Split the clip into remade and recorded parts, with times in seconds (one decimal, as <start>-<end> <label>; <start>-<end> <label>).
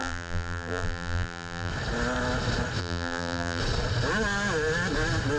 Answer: 0.0-1.7 remade; 1.7-2.8 recorded; 2.8-3.6 remade; 3.6-5.4 recorded